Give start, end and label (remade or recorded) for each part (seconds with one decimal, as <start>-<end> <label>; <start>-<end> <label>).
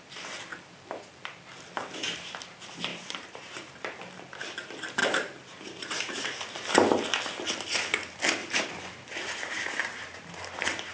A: 0.0-2.9 recorded; 2.9-3.7 remade; 3.7-5.0 recorded; 5.0-6.2 remade; 6.2-8.4 recorded; 8.4-10.3 remade; 10.3-10.9 recorded